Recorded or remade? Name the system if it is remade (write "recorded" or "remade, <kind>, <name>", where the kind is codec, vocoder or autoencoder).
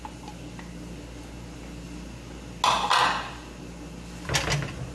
recorded